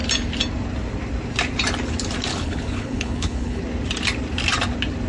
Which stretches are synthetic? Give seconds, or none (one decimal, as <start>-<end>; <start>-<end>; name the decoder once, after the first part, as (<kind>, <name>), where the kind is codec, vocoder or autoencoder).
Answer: 2.3-3.6 (codec, HILCodec)